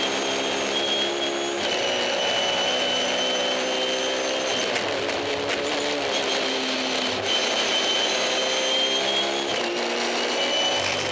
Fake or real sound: real